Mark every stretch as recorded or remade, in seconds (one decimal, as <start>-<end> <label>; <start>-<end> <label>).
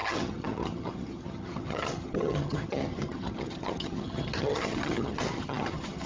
0.0-6.1 remade